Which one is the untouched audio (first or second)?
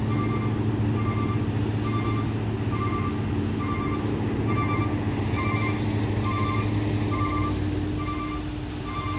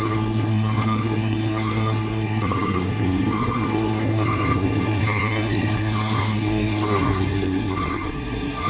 first